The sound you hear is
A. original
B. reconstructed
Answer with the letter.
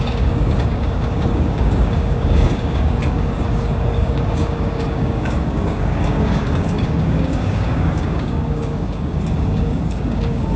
B